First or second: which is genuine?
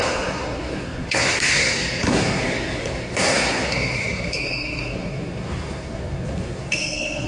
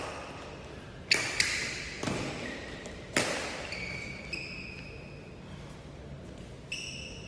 second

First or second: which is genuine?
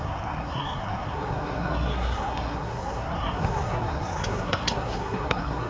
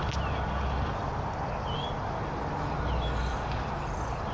second